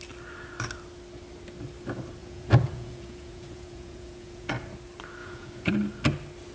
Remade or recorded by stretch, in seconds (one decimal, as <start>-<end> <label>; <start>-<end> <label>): 0.0-2.2 recorded; 2.2-4.5 remade; 4.5-5.2 recorded; 5.2-5.7 remade; 5.7-6.5 recorded